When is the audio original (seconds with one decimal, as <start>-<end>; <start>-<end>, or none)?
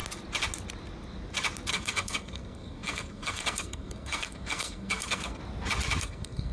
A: 0.0-1.7; 5.4-6.0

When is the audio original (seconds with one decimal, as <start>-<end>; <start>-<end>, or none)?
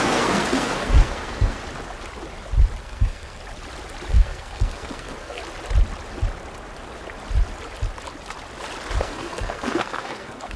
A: 1.6-2.8; 3.4-4.1; 5.4-9.0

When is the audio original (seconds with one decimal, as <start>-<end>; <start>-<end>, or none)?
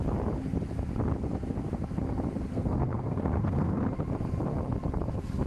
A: 0.0-2.5; 3.8-5.5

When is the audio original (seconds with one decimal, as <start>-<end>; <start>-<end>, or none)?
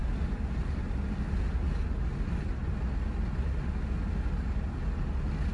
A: 0.0-5.5